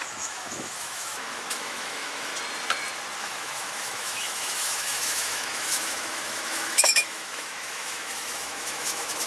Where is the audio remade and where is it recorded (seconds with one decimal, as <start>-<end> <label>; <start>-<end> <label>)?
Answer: 0.0-2.3 remade; 2.3-3.2 recorded; 3.2-9.3 remade